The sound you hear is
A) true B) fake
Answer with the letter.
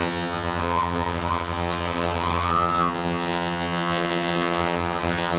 B